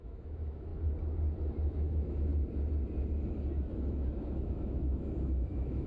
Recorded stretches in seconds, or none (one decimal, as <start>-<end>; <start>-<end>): 0.7-1.7; 2.3-4.3

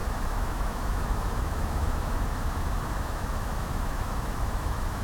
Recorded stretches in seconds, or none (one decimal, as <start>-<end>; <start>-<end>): none

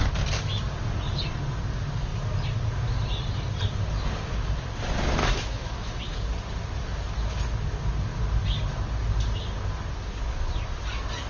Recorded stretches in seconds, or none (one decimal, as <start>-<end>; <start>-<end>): 0.0-5.2; 6.0-11.3

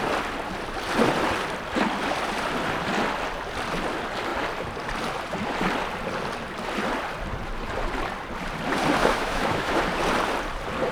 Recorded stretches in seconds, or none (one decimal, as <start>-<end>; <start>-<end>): 0.0-9.0; 9.8-10.9

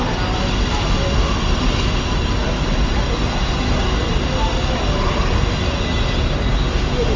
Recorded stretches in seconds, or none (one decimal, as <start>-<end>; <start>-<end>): 0.0-7.2

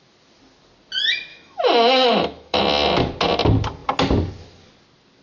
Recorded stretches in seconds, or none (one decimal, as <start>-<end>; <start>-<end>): 0.0-1.3; 2.6-5.2

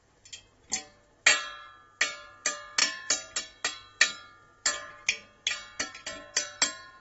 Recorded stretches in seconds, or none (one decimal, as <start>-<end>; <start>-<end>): 0.0-7.0

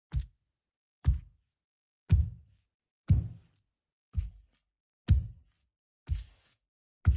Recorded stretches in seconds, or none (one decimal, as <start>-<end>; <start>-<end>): 0.0-1.5; 2.8-5.6; 6.8-7.2